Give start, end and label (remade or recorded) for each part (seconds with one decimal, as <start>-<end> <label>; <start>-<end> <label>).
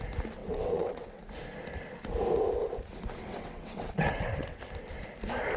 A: 0.0-0.4 recorded; 0.4-1.2 remade; 1.2-3.3 recorded; 3.3-4.6 remade; 4.6-5.6 recorded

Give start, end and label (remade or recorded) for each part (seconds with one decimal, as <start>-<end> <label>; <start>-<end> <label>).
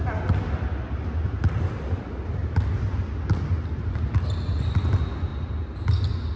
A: 0.0-6.4 recorded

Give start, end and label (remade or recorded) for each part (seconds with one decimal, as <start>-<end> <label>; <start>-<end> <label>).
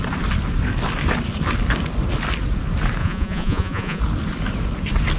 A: 0.0-3.0 recorded; 3.0-4.0 remade; 4.0-5.2 recorded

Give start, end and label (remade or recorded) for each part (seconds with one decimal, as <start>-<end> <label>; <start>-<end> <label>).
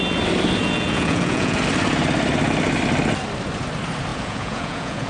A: 0.0-0.6 recorded; 0.6-1.6 remade; 1.6-4.1 recorded; 4.1-5.1 remade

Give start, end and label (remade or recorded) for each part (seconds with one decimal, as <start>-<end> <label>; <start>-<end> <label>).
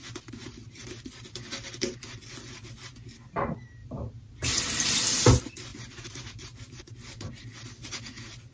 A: 0.0-3.8 recorded; 3.8-4.8 remade; 4.8-5.7 recorded; 5.7-7.3 remade; 7.3-8.5 recorded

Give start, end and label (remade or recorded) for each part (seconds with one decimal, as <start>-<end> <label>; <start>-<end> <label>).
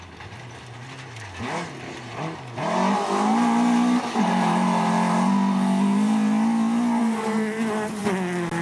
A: 0.0-8.6 recorded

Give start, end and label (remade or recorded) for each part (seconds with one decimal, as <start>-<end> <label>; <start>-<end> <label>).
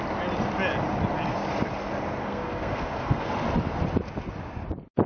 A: 0.0-2.2 recorded; 2.2-3.3 remade; 3.3-5.1 recorded